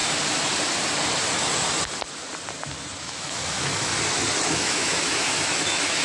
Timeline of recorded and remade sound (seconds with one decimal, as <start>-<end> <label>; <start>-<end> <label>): 0.0-3.0 recorded; 3.0-3.9 remade; 3.9-4.5 recorded; 4.5-6.0 remade